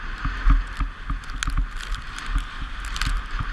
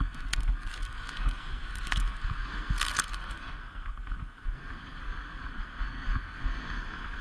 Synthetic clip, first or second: second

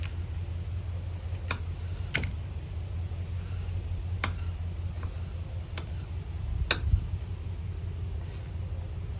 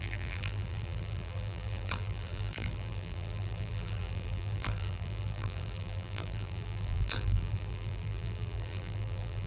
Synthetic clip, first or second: second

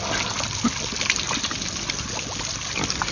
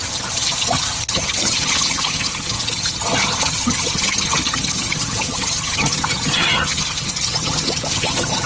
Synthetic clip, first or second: second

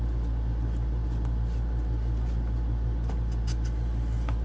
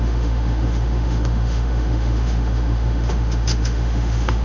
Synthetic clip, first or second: second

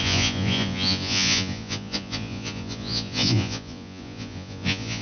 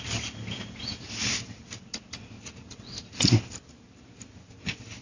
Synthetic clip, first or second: first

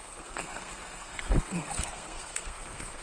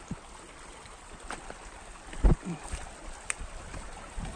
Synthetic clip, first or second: first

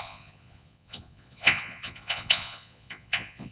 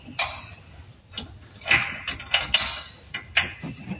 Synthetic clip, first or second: first